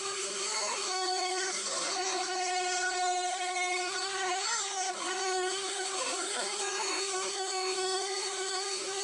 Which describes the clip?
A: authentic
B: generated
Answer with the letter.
B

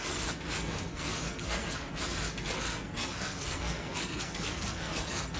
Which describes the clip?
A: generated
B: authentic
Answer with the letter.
A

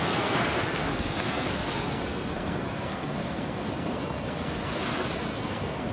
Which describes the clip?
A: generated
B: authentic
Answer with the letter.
A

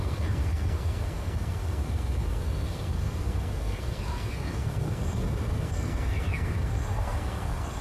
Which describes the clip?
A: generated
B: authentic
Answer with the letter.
A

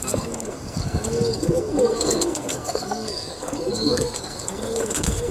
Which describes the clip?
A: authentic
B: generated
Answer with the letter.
B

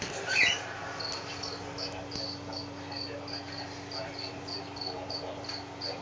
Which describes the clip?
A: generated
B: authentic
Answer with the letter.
B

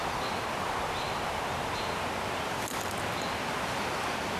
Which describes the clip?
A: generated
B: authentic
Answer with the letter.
B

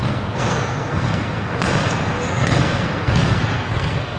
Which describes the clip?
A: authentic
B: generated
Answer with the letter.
B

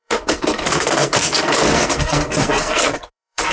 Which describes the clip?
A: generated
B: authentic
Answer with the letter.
A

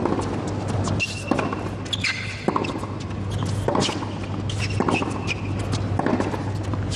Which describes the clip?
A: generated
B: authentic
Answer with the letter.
B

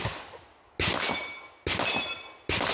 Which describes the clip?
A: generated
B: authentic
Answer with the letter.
B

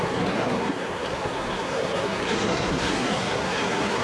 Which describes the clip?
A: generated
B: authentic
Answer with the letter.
A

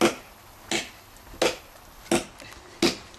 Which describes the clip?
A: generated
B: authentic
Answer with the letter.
B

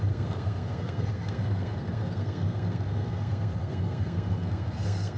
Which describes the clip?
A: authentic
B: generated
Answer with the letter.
B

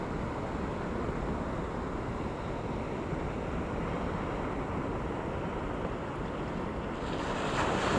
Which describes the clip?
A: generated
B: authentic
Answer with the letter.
B